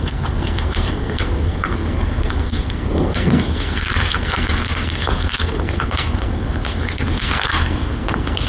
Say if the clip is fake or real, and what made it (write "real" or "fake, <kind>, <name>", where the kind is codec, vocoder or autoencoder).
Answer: fake, codec, SNAC